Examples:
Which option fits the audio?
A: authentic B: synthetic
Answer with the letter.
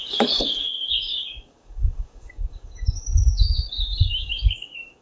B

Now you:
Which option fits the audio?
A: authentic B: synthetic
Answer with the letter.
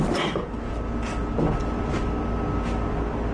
A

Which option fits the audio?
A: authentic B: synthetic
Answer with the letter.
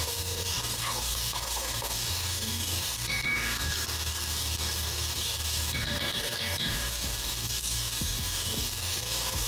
B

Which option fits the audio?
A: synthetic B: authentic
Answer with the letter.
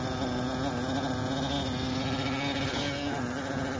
B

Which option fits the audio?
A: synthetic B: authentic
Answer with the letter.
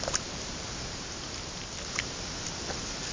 B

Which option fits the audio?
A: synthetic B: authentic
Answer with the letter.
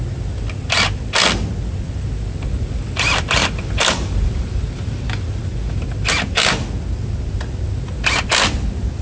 B